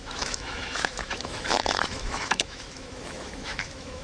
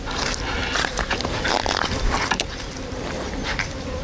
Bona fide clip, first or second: second